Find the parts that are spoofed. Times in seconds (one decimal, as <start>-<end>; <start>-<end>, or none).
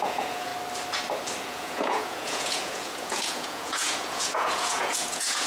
0.0-0.5; 1.4-5.5